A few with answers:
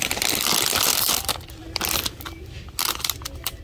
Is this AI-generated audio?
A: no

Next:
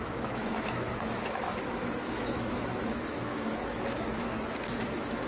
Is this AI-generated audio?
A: yes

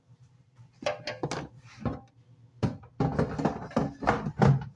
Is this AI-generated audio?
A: no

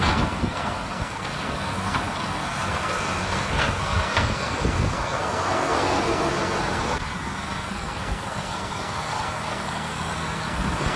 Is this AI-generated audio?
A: yes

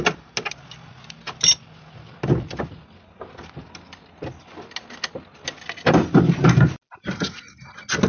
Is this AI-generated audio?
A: no